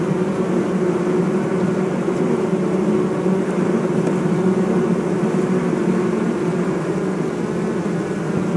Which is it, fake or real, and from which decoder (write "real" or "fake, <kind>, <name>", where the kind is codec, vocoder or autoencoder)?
real